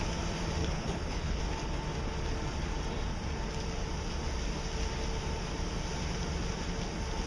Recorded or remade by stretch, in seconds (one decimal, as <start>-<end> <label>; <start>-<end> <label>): 0.0-0.6 recorded; 0.6-1.4 remade; 1.4-7.3 recorded